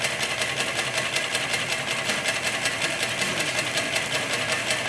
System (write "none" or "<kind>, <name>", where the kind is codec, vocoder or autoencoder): none